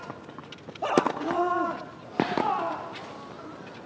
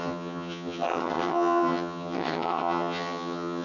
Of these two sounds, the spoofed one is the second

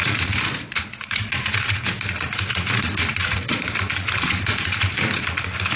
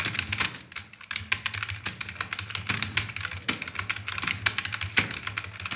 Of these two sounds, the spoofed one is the first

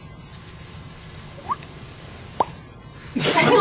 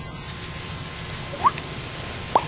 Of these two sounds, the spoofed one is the first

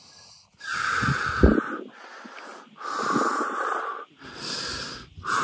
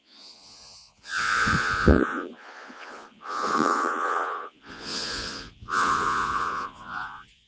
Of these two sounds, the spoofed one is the second